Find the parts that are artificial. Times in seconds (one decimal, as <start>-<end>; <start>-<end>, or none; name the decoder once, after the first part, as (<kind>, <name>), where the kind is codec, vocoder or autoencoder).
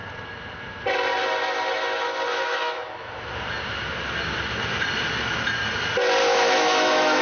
2.3-3.3 (autoencoder, DAC-VAE); 6.2-7.2